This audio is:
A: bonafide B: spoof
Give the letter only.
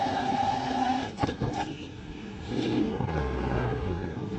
B